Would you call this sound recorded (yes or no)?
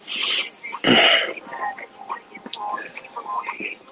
yes